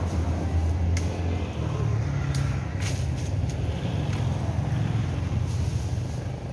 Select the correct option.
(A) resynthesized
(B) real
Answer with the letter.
B